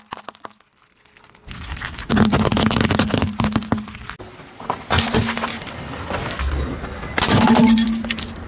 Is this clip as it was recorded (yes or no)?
yes